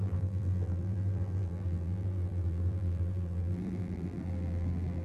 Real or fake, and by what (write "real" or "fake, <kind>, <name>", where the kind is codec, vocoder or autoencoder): fake, vocoder, BigVGAN v2